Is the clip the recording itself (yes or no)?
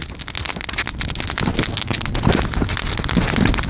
yes